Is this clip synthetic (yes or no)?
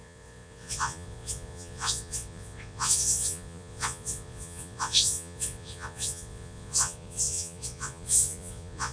yes